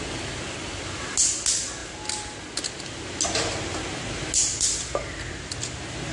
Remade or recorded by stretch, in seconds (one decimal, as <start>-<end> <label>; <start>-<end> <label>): 0.0-6.1 recorded